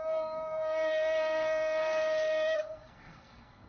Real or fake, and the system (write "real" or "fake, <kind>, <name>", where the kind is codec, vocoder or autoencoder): fake, codec, SNAC